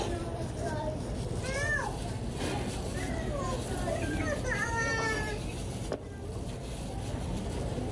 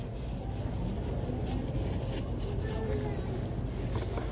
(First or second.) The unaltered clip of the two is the second